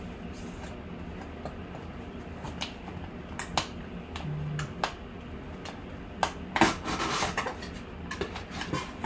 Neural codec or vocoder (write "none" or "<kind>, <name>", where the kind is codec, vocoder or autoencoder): none